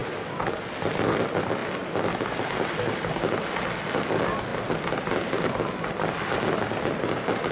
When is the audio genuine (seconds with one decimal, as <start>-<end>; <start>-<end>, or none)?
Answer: 0.6-7.5